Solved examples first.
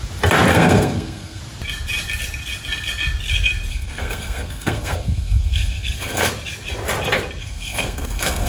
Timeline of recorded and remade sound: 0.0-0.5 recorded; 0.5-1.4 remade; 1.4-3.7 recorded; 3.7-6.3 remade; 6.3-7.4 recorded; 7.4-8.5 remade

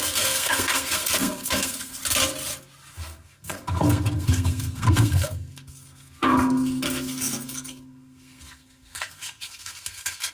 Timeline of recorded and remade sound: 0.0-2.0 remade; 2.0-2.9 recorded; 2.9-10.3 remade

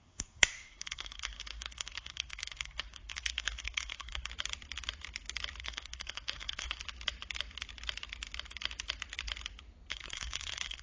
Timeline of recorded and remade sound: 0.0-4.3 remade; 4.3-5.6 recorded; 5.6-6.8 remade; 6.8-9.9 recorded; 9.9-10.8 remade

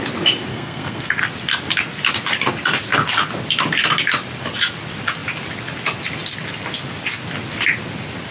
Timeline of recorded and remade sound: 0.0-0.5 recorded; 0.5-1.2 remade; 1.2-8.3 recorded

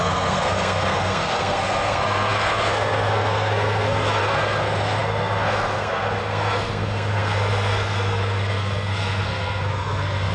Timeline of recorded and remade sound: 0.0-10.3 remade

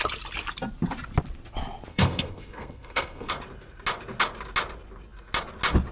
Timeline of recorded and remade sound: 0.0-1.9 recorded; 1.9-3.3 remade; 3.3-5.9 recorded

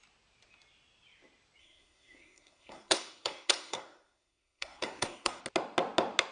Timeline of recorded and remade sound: 0.0-1.6 recorded; 1.6-5.4 remade; 5.4-6.3 recorded

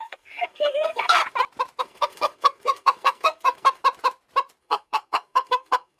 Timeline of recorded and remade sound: 0.0-1.2 remade; 1.2-1.8 recorded; 1.8-3.8 remade; 3.8-4.6 recorded; 4.6-6.0 remade